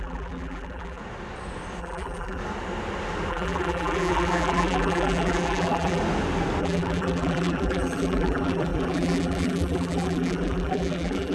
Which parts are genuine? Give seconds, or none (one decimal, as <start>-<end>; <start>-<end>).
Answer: 1.0-1.8; 2.4-3.3; 6.0-6.6